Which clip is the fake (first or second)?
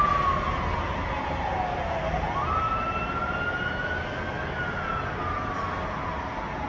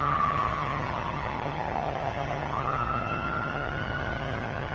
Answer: second